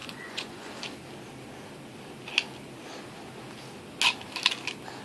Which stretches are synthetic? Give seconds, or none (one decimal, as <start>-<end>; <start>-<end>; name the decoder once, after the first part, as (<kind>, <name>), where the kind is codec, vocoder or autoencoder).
0.0-0.7 (vocoder, Vocos)